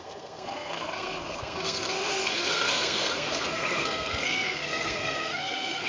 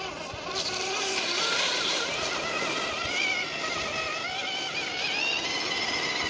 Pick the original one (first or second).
second